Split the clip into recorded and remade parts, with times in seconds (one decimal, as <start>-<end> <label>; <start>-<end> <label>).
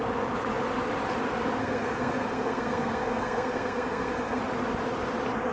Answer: 0.0-1.6 recorded; 1.6-4.4 remade; 4.4-5.5 recorded